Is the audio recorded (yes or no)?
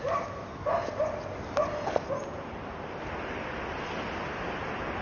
yes